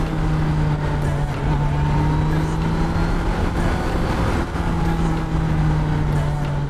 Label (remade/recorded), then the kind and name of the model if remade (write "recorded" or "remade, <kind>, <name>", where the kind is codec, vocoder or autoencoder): recorded